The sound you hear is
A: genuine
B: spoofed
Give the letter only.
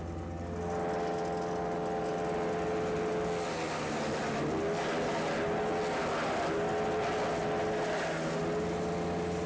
A